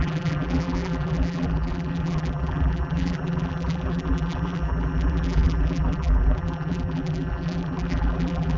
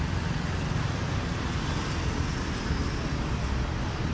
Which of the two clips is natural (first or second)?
second